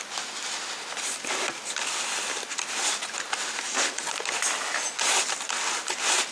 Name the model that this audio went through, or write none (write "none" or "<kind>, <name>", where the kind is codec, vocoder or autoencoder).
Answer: none